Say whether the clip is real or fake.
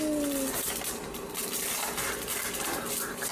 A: real